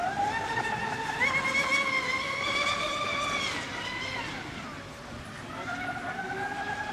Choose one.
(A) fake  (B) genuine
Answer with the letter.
B